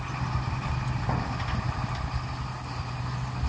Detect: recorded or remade recorded